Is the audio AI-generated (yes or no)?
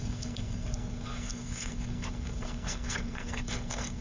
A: yes